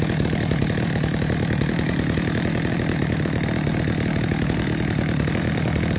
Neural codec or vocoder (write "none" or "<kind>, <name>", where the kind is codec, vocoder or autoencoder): vocoder, BigVGAN v2